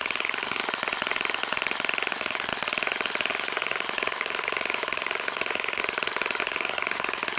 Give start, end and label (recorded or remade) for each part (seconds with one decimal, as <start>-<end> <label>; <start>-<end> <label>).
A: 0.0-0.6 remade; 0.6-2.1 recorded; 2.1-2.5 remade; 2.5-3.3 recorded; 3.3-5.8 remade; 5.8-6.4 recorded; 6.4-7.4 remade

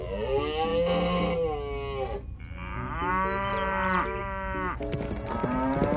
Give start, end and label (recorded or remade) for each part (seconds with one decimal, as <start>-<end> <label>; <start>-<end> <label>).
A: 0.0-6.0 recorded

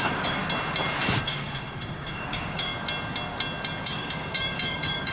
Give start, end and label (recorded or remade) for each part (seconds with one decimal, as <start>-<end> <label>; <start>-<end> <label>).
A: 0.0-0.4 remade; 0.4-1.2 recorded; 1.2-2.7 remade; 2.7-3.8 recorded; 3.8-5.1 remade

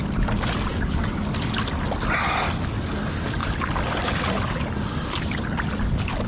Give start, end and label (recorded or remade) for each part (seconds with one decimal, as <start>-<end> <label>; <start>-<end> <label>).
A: 0.0-0.7 recorded; 0.7-1.2 remade; 1.2-6.3 recorded

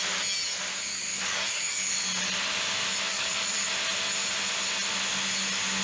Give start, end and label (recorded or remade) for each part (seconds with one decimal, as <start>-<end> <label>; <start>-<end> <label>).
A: 0.0-0.9 recorded; 0.9-2.0 remade; 2.0-3.1 recorded; 3.1-3.7 remade; 3.7-5.8 recorded

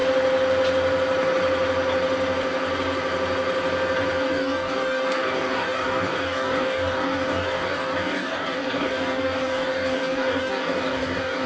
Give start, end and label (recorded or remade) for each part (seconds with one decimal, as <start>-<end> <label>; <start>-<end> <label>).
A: 0.0-4.2 recorded; 4.2-11.5 remade